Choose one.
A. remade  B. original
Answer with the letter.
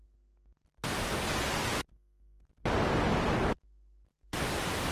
B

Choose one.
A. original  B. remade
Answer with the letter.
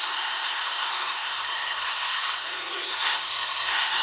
B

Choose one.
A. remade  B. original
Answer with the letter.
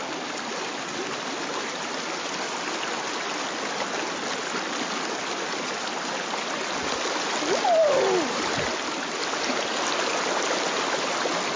B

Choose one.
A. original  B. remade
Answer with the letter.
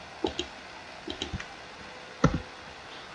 A